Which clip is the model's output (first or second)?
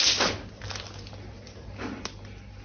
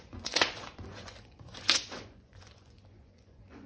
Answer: second